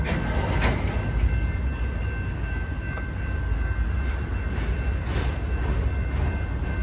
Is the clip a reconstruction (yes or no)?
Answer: no